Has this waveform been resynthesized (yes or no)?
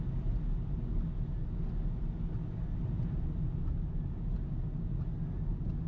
no